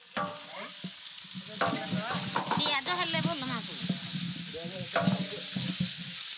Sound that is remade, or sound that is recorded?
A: recorded